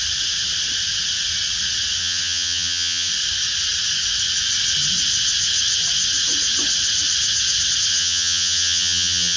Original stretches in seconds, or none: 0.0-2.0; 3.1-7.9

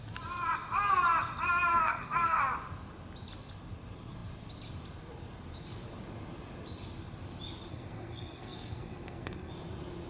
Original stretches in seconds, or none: 0.0-1.7; 2.4-7.7; 9.5-10.1

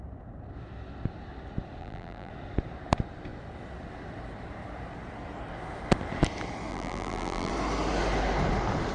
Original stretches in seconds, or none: 0.0-1.8; 2.3-6.7; 7.5-8.9

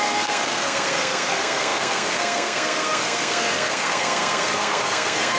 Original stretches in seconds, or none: none

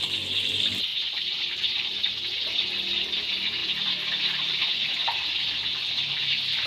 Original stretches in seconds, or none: 0.0-0.9; 2.2-3.6; 4.6-5.0; 5.5-6.7